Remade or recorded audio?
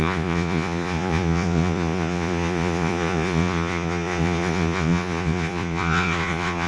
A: remade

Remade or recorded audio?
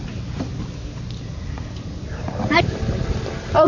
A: recorded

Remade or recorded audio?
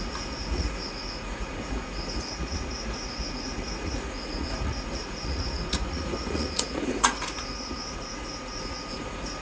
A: remade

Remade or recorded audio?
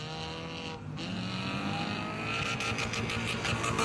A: recorded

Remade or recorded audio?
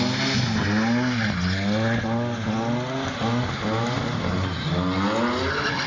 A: recorded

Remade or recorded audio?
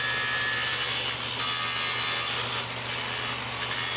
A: recorded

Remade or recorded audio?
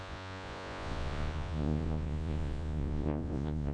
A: remade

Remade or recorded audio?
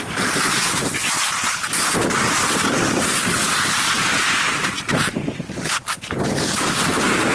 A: recorded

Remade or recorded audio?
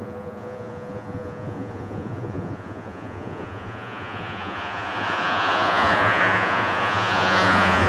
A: remade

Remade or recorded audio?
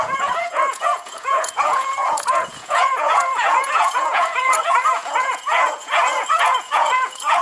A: remade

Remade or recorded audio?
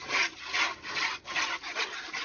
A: recorded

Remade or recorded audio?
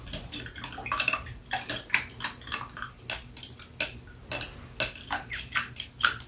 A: recorded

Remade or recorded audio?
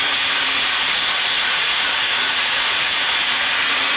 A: remade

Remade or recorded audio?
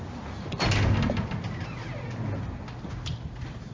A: recorded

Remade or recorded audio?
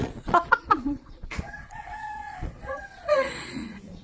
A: remade